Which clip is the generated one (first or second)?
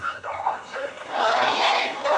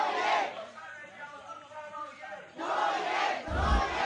first